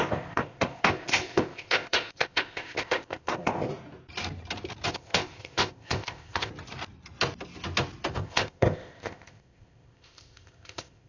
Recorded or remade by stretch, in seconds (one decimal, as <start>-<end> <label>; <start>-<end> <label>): 0.0-3.7 remade; 3.7-4.9 recorded; 4.9-6.5 remade; 6.5-8.1 recorded; 8.1-11.1 remade